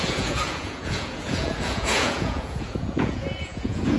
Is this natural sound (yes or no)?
no